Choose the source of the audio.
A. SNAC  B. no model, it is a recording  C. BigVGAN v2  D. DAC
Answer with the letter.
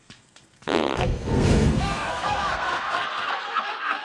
A